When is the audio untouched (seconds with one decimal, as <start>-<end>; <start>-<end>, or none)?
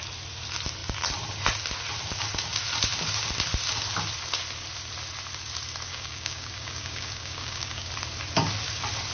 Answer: 0.0-5.9; 7.9-9.1